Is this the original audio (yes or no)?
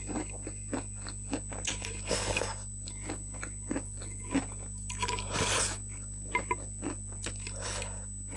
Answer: yes